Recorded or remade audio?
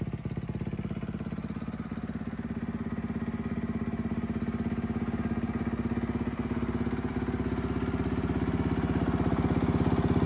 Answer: recorded